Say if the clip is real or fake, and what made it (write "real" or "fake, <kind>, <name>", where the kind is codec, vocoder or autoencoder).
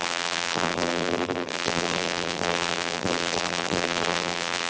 fake, vocoder, BigVGAN v2